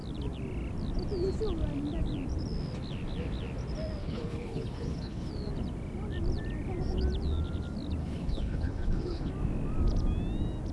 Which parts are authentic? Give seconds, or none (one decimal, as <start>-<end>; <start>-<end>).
0.0-4.0; 5.3-8.0; 9.3-10.7